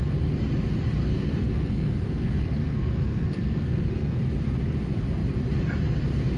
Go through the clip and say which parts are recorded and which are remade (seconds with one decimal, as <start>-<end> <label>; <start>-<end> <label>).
0.0-1.0 recorded; 1.0-4.2 remade; 4.2-6.4 recorded